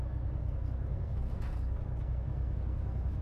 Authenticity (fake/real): fake